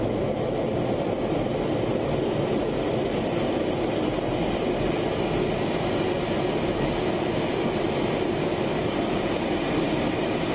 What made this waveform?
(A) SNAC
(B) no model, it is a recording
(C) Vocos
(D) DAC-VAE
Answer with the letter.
B